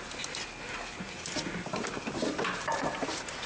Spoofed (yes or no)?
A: no